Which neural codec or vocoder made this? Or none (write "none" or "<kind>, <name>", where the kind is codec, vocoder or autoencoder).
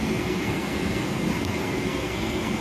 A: codec, SNAC